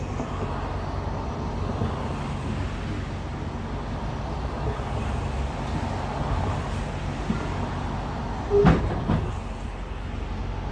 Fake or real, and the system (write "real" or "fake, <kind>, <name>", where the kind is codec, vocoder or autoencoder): real